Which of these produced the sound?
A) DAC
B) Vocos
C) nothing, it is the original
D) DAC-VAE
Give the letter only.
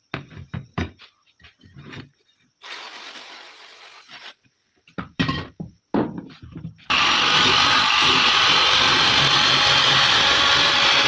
C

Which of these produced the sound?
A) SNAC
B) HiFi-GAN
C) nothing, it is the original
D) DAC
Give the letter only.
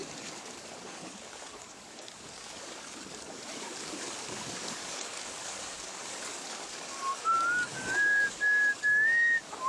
D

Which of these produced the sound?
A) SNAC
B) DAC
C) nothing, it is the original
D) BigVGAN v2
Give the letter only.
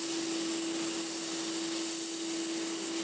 C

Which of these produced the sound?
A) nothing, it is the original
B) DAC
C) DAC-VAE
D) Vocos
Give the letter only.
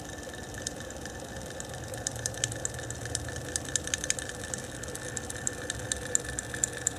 A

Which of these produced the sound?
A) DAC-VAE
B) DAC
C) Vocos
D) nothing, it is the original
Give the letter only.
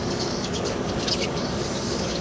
B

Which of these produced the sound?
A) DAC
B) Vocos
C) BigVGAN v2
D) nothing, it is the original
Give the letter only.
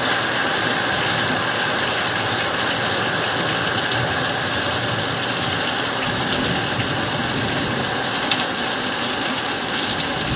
D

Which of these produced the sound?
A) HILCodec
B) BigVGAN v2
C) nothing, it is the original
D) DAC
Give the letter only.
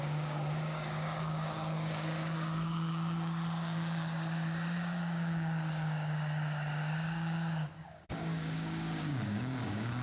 D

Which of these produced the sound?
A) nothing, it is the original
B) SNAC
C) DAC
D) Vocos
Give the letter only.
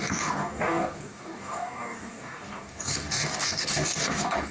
C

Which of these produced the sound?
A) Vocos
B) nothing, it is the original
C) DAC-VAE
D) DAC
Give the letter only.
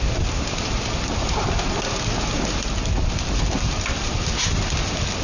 B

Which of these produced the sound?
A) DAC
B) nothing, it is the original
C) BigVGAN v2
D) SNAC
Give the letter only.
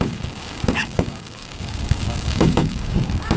A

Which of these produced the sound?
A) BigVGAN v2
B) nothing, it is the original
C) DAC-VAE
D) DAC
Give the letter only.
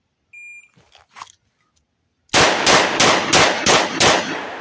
B